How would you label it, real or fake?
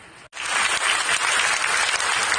real